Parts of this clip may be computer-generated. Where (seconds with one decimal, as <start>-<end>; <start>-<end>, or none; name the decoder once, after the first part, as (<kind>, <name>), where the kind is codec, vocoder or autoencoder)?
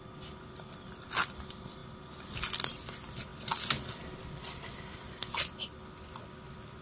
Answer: none